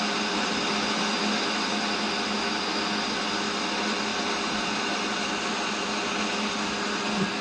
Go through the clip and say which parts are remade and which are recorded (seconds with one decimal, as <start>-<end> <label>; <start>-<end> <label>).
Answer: 0.0-7.4 recorded